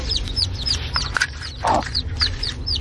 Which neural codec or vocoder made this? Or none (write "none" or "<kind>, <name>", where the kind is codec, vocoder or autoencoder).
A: vocoder, Vocos